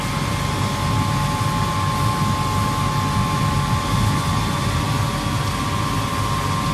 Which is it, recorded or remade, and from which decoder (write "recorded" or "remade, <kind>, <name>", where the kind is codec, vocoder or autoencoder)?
recorded